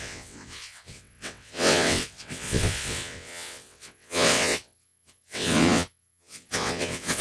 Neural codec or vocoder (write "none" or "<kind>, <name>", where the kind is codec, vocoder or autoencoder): vocoder, WaveNeXt